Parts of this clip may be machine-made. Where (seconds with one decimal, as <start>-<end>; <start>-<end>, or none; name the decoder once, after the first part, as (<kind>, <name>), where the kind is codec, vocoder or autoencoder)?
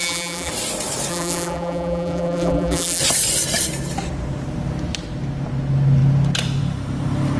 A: 0.0-0.5 (vocoder, BigVGAN v2); 1.1-3.0